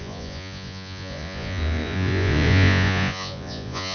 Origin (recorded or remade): remade